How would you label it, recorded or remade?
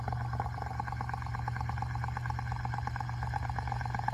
recorded